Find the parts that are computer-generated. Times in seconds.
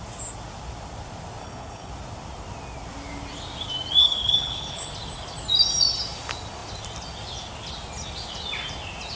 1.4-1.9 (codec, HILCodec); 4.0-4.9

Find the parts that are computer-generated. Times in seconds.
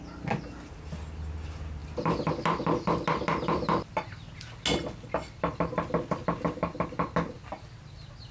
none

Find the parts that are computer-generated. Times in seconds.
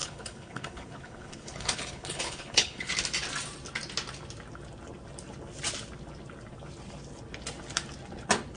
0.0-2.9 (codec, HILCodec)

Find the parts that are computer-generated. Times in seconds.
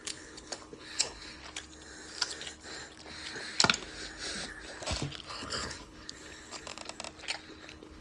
0.0-1.4 (codec, HILCodec); 5.3-6.8; 7.5-8.0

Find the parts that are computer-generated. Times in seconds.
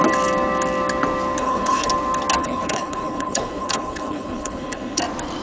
1.4-1.9 (codec, HILCodec); 2.4-5.0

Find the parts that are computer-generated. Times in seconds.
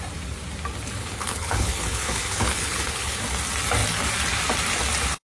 1.0-3.2 (codec, HILCodec)